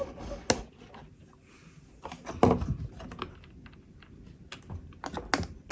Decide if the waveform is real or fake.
real